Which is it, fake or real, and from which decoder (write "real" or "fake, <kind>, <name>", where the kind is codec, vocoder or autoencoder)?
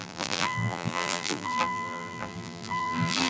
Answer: fake, vocoder, BigVGAN v2